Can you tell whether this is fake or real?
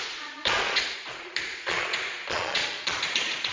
fake